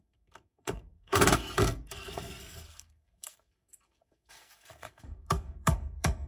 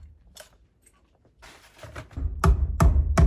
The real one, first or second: second